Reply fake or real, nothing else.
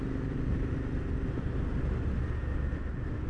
real